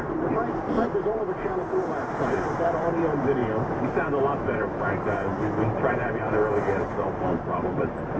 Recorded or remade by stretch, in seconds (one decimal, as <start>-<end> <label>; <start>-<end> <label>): 0.0-0.4 remade; 0.4-1.9 recorded; 1.9-3.4 remade; 3.4-4.2 recorded; 4.2-8.2 remade